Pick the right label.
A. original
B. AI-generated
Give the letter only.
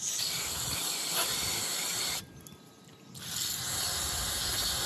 A